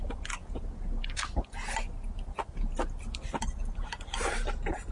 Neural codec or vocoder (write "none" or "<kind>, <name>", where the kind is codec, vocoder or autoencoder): none